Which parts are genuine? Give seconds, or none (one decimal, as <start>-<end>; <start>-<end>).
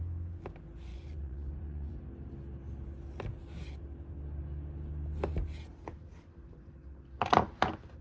0.0-0.9; 2.0-8.0